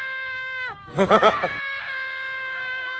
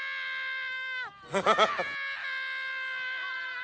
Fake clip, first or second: first